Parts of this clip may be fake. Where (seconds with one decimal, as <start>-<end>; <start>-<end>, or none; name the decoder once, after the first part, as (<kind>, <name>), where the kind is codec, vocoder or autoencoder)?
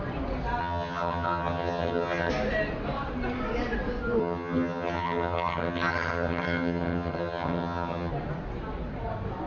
0.6-2.3 (vocoder, HiFi-GAN); 4.2-8.1